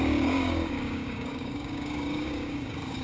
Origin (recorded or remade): remade